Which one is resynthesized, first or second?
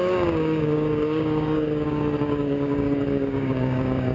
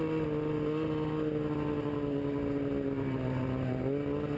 first